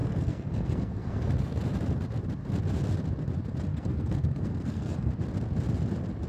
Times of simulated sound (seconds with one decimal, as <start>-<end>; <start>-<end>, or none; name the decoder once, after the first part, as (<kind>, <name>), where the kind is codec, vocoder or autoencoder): 0.0-1.6 (codec, SNAC); 3.7-5.1